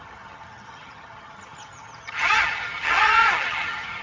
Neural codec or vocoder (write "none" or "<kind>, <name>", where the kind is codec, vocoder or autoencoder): vocoder, HiFi-GAN